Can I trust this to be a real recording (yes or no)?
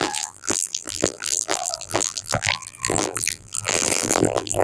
no